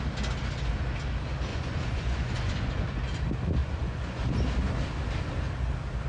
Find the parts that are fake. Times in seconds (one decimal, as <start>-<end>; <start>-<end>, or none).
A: 1.5-2.9; 3.6-4.3